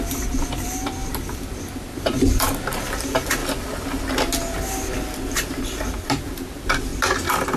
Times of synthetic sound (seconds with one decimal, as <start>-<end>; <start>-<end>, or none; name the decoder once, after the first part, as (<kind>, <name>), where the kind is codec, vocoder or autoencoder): 0.0-3.4 (vocoder, BigVGAN v2); 6.0-6.9